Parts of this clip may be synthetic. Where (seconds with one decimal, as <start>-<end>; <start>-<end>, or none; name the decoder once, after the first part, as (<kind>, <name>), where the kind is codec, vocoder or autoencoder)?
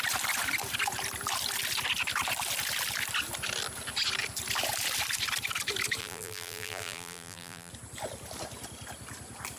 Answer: 6.0-7.7 (vocoder, BigVGAN v2)